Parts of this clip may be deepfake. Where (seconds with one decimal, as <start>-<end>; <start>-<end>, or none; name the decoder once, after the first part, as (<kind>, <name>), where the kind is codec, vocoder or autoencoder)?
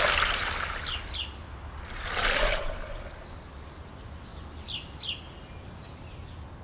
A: none